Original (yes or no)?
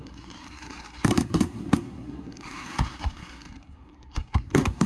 no